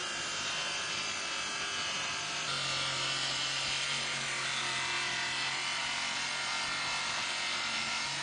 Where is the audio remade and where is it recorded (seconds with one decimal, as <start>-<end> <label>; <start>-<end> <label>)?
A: 0.0-8.2 recorded